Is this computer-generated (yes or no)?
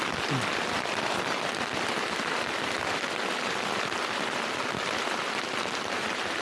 no